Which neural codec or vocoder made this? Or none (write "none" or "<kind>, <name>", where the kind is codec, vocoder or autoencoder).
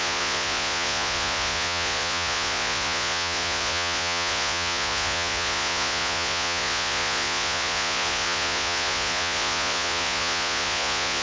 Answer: vocoder, Vocos